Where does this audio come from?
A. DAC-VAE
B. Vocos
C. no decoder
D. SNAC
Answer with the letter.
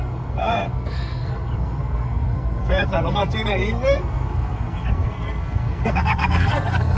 D